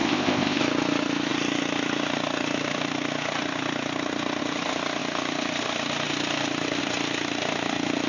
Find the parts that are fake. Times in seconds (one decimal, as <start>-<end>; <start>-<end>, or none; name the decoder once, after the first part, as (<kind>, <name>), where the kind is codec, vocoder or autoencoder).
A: 0.0-0.6 (codec, ZipCodec)